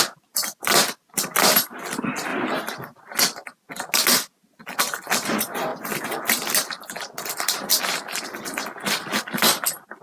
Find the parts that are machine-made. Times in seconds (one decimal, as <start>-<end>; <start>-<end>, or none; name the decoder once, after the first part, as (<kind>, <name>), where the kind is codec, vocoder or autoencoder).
none